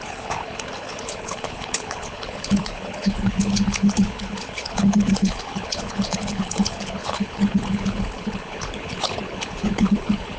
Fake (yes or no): yes